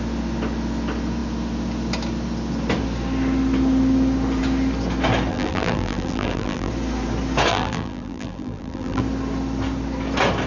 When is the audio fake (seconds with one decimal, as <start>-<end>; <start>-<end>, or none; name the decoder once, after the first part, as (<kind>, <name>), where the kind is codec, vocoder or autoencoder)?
5.3-6.7 (vocoder, BigVGAN v2); 7.5-9.0